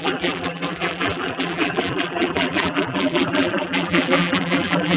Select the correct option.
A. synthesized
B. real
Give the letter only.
A